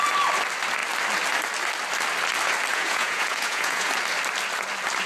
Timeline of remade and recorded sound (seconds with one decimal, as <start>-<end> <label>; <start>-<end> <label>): 0.0-2.7 recorded; 2.7-3.9 remade; 3.9-5.1 recorded